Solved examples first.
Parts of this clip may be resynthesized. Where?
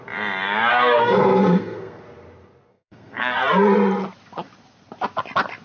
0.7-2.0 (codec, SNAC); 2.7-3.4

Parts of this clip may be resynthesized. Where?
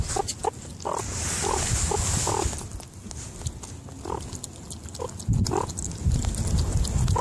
none